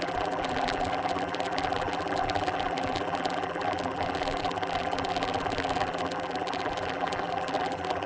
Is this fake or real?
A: fake